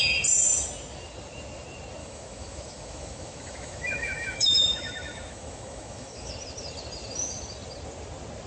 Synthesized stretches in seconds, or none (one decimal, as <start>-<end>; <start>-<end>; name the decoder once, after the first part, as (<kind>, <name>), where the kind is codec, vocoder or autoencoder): 2.0-6.3 (autoencoder, DAC-VAE)